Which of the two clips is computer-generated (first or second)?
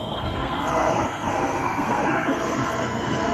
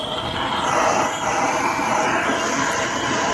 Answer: first